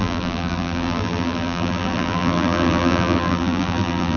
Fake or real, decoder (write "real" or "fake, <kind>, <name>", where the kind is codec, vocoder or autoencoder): fake, vocoder, BigVGAN v2